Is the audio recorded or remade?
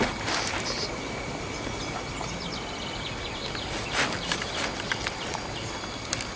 recorded